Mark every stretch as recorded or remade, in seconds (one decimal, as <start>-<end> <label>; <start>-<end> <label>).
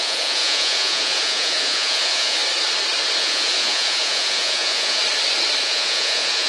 0.0-2.4 remade; 2.4-3.2 recorded; 3.2-5.0 remade; 5.0-5.6 recorded; 5.6-6.5 remade